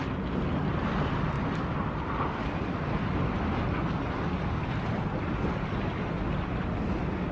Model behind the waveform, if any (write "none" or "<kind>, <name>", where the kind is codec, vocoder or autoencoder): none